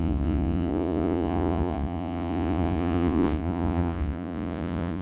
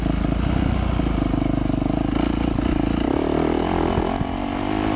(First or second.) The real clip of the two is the second